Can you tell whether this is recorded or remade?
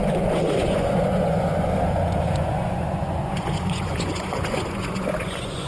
remade